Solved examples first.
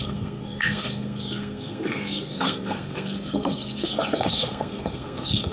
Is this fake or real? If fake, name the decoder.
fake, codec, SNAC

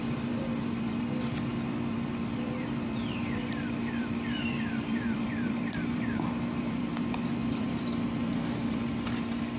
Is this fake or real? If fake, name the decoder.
fake, vocoder, BigVGAN v2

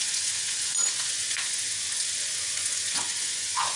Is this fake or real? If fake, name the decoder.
fake, vocoder, Vocos